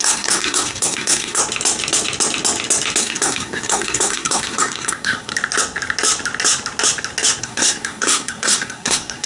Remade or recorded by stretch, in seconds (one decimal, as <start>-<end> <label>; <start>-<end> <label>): 0.0-1.4 remade; 1.4-3.0 recorded; 3.0-5.3 remade; 5.3-7.4 recorded; 7.4-9.3 remade